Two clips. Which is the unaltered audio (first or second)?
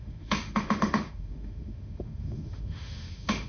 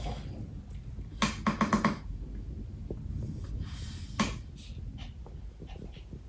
second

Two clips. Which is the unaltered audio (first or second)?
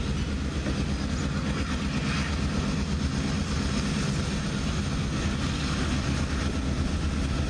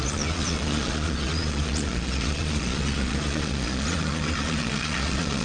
first